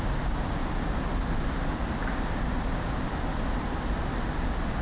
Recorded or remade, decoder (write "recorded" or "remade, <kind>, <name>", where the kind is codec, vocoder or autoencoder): recorded